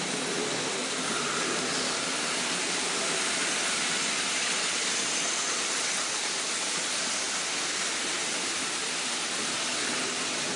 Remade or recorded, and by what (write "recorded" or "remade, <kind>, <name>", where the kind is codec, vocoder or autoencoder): remade, vocoder, BigVGAN v2